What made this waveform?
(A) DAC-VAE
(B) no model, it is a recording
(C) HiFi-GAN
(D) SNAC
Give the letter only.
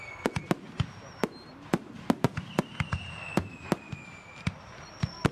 B